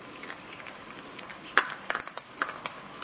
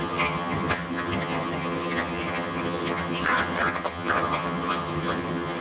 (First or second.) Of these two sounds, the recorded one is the first